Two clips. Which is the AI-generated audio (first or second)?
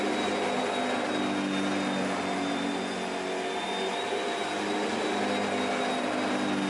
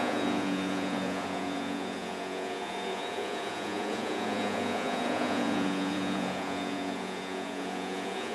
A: second